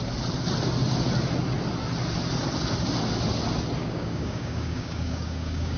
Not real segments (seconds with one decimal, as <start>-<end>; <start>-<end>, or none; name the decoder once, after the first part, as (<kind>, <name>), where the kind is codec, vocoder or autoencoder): 3.8-5.8 (codec, DAC)